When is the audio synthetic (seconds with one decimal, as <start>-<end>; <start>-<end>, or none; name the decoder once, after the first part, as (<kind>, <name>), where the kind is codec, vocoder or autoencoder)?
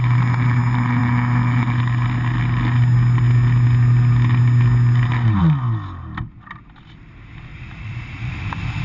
7.5-8.3 (vocoder, Vocos)